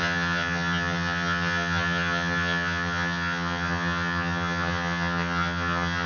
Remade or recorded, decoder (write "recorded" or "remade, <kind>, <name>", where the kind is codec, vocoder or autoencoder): remade, vocoder, HiFi-GAN